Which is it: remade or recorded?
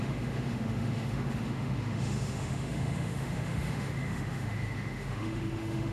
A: remade